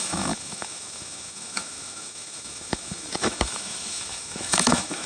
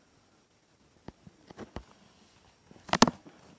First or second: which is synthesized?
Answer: first